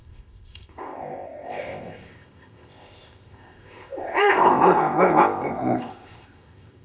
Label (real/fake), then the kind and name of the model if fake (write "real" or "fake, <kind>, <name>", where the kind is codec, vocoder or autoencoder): fake, codec, ZipCodec